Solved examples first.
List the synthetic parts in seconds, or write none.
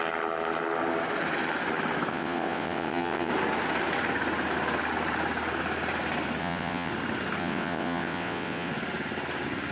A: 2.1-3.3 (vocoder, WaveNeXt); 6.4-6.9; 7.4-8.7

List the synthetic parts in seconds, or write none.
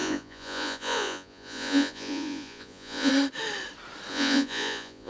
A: 0.0-3.1 (vocoder, Vocos); 4.1-5.1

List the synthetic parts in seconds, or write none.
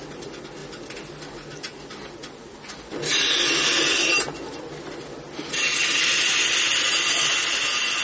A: none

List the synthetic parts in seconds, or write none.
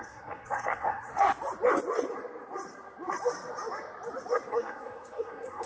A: 0.0-1.1 (codec, SNAC); 4.5-5.7